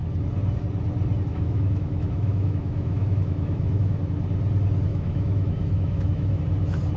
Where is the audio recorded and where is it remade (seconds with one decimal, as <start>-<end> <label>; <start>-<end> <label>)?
0.0-1.3 recorded; 1.3-4.0 remade; 4.0-4.9 recorded; 4.9-6.4 remade; 6.4-7.0 recorded